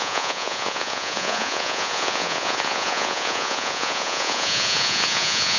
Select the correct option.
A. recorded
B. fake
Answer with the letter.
B